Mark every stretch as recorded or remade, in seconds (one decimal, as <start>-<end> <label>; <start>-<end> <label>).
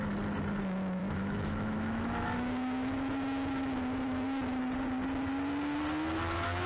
0.0-1.0 recorded; 1.0-4.6 remade; 4.6-6.7 recorded